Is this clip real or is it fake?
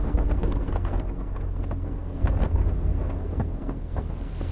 fake